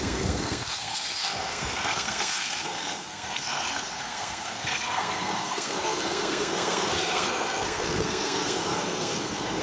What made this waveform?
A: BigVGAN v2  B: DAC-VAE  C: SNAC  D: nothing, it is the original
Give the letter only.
C